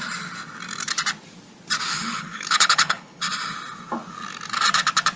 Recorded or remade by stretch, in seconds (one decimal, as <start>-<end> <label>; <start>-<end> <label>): 0.0-1.9 recorded; 1.9-3.2 remade; 3.2-5.2 recorded